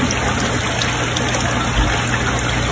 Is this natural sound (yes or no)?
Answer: yes